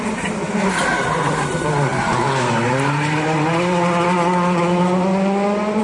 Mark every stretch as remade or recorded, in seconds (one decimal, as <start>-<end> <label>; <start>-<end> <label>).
0.0-5.8 recorded